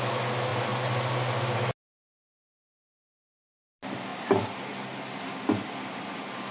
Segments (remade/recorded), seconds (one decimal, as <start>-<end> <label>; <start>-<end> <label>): 0.0-6.5 recorded